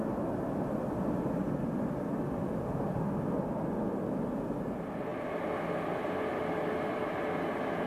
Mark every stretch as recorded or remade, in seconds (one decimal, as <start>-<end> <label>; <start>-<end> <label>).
0.0-7.9 recorded